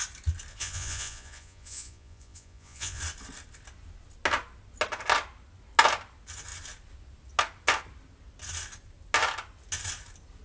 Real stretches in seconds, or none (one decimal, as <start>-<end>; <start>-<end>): 0.0-0.5; 3.0-10.4